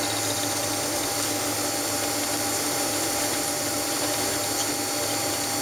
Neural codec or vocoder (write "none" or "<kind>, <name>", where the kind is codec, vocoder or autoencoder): none